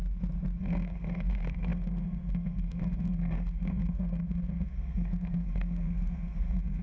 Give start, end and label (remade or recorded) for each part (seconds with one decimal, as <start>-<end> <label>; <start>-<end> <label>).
0.0-0.6 recorded; 0.6-6.8 remade